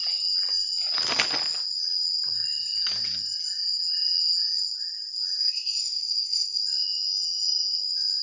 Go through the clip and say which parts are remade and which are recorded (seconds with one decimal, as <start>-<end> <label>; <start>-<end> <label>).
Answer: 0.0-5.4 recorded; 5.4-6.6 remade; 6.6-8.2 recorded